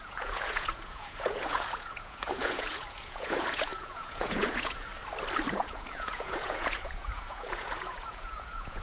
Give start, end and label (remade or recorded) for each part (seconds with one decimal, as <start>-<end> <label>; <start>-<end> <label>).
0.0-4.9 remade; 4.9-5.5 recorded; 5.5-8.8 remade